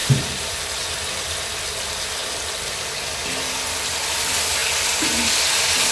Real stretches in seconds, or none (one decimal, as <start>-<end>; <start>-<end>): 0.6-5.9